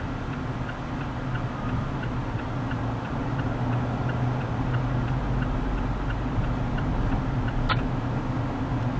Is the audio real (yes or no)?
yes